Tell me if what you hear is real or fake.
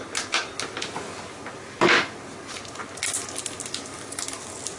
real